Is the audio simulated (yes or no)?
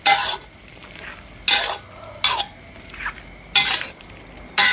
no